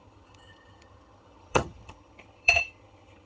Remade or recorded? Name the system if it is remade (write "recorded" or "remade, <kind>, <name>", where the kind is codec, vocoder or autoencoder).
remade, vocoder, HiFi-GAN